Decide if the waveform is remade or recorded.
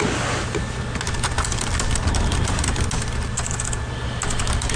recorded